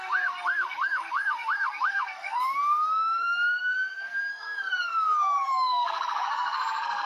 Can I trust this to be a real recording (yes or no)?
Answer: no